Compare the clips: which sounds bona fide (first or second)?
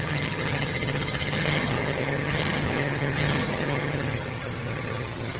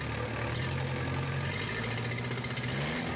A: second